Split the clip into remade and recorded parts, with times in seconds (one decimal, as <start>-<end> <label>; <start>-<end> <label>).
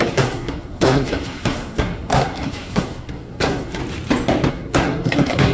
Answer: 0.0-3.8 remade; 3.8-4.5 recorded; 4.5-5.5 remade